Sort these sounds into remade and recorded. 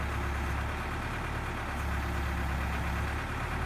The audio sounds recorded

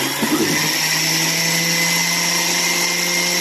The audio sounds recorded